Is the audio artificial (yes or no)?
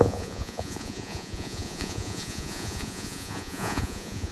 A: yes